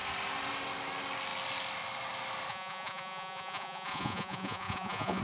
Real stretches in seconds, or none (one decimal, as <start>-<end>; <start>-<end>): 0.0-2.5